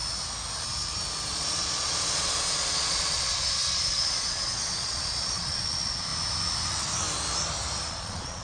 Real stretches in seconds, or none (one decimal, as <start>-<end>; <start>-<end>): 0.0-1.3; 6.1-7.9